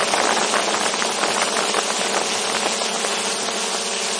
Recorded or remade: recorded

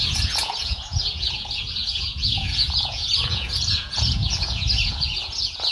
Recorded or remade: remade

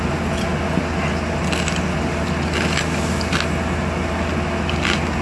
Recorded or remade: recorded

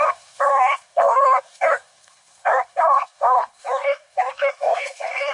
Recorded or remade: remade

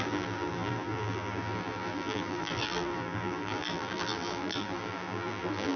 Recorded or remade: remade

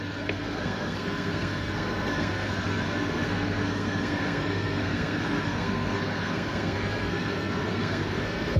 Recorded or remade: remade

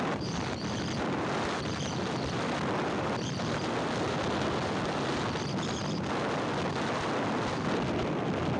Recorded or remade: recorded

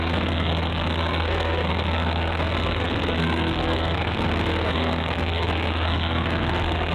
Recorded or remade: remade